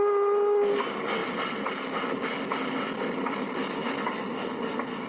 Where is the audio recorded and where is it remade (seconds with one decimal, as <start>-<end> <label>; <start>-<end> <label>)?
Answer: 0.0-5.1 recorded